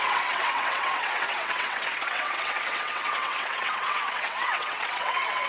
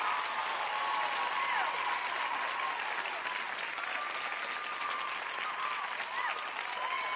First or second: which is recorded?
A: second